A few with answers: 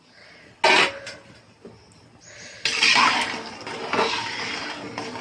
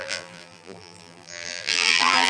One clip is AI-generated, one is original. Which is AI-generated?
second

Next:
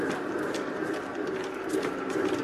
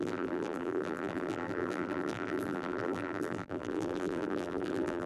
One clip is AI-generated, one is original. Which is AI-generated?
second